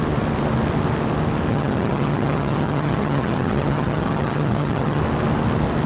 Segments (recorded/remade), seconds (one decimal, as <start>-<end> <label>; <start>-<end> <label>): 0.0-1.5 recorded; 1.5-5.0 remade; 5.0-5.9 recorded